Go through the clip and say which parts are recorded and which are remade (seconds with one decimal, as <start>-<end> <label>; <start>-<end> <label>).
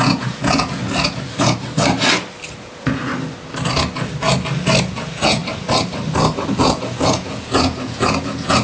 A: 0.0-0.8 remade; 0.8-2.6 recorded; 2.6-3.1 remade; 3.1-4.8 recorded; 4.8-5.4 remade; 5.4-6.6 recorded; 6.6-8.6 remade